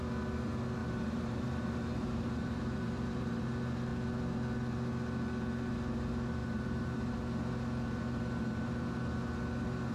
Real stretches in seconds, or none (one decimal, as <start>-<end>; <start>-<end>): 0.0-0.8; 3.4-6.4; 7.1-9.9